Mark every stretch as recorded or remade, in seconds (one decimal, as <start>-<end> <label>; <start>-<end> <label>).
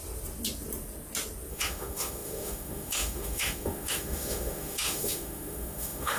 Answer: 0.0-1.5 recorded; 1.5-6.2 remade